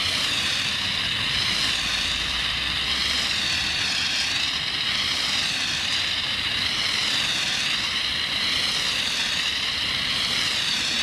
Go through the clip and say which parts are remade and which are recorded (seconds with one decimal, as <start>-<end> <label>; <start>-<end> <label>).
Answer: 0.0-3.0 remade; 3.0-3.6 recorded; 3.6-7.0 remade; 7.0-8.7 recorded; 8.7-11.0 remade